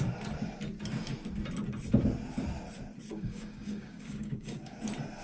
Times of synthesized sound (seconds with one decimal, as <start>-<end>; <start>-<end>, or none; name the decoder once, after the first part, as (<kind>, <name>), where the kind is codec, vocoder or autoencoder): 3.1-4.8 (codec, DAC)